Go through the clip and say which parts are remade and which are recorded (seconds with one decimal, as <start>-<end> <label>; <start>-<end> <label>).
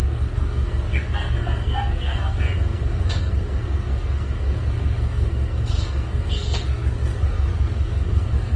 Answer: 0.0-8.6 remade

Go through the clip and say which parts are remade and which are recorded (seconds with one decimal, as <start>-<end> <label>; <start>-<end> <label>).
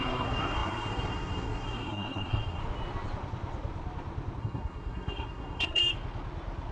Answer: 0.0-2.6 remade; 2.6-4.4 recorded; 4.4-5.8 remade; 5.8-6.7 recorded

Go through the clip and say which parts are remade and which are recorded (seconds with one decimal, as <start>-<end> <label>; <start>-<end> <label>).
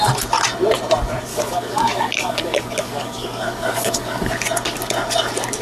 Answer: 0.0-1.3 recorded; 1.3-4.3 remade; 4.3-5.6 recorded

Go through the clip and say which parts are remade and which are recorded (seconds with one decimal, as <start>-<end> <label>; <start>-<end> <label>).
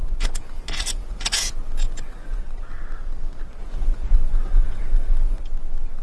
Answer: 0.0-2.4 remade; 2.4-3.6 recorded; 3.6-5.4 remade; 5.4-6.0 recorded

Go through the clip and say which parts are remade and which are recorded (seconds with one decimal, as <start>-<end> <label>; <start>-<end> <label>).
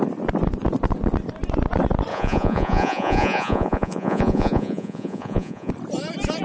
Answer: 0.0-2.1 recorded; 2.1-5.7 remade; 5.7-6.4 recorded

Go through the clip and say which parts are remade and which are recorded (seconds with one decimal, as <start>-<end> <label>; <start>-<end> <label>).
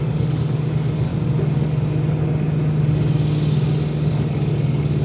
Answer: 0.0-1.1 remade; 1.1-4.1 recorded; 4.1-5.0 remade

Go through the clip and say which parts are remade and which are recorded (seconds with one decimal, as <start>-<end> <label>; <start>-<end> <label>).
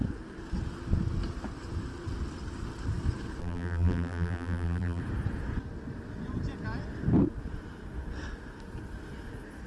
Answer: 0.0-3.4 recorded; 3.4-5.0 remade; 5.0-9.7 recorded